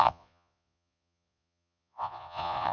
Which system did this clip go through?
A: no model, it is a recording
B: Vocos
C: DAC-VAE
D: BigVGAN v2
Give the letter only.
B